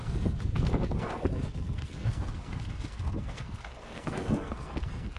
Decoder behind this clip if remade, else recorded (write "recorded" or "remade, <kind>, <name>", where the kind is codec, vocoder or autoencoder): remade, codec, SNAC